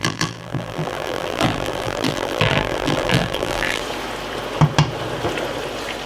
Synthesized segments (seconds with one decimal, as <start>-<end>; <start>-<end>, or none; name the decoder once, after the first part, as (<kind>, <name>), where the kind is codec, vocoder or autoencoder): 0.0-3.8 (vocoder, BigVGAN v2)